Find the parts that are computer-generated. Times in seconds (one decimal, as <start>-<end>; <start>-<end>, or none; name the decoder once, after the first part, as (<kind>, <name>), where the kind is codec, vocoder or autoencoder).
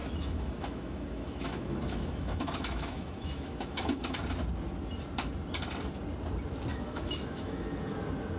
0.0-4.2 (autoencoder, DAC-VAE); 6.7-7.6